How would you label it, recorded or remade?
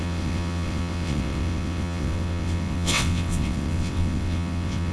remade